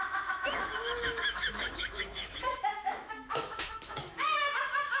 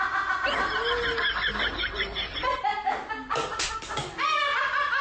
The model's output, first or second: first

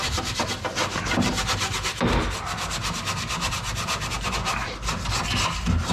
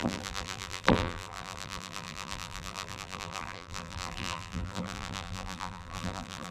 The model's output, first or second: second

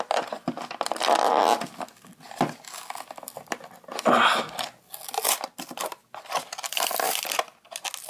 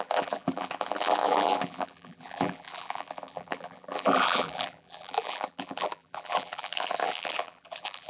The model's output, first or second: second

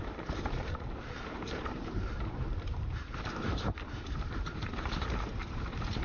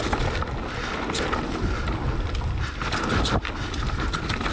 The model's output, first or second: first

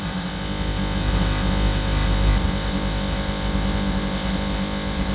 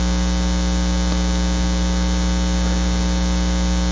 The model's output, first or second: first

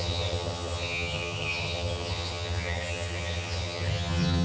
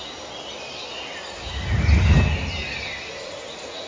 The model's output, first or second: first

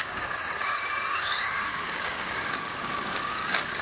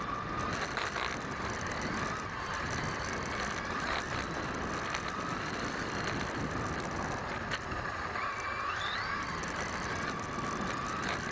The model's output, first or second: first